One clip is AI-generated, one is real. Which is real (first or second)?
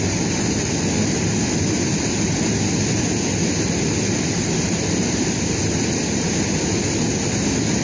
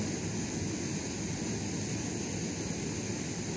second